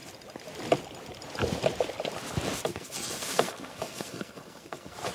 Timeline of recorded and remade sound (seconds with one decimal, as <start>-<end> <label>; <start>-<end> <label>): 0.0-2.7 recorded; 2.7-5.1 remade